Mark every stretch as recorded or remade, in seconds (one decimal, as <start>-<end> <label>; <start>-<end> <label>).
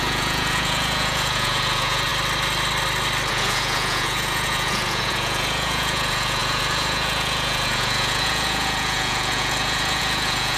0.0-2.1 remade; 2.1-3.3 recorded; 3.3-10.6 remade